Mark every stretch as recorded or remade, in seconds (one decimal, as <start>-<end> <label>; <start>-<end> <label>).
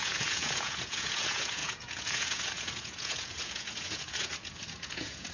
0.0-5.3 remade